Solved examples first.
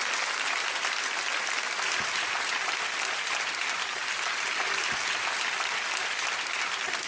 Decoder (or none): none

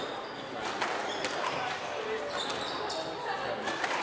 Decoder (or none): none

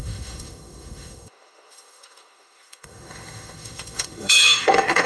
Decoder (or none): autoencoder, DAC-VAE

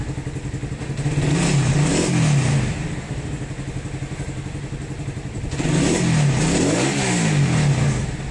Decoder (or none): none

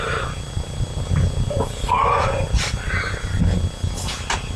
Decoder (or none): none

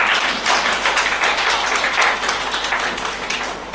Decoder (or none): none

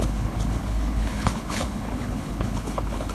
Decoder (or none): codec, HILCodec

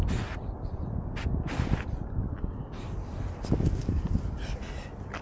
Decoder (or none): none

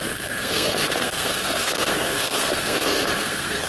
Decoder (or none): codec, SNAC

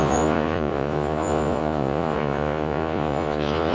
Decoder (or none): vocoder, Vocos